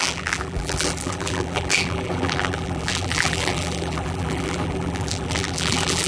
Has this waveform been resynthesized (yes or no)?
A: yes